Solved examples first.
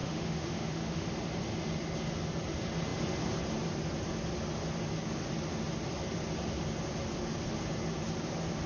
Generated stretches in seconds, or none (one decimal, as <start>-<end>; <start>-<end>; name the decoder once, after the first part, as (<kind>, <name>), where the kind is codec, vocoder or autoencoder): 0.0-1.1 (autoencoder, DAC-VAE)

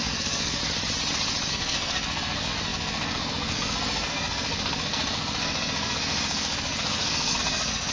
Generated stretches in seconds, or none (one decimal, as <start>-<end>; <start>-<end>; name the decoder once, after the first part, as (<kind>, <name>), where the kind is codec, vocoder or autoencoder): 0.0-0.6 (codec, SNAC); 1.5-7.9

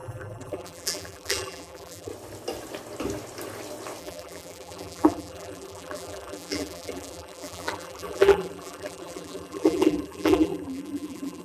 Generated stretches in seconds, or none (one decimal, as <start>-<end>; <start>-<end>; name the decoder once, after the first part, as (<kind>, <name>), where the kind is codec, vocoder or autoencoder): 0.0-2.1 (vocoder, BigVGAN v2); 4.0-11.4